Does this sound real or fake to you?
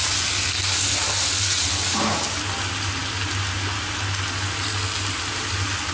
real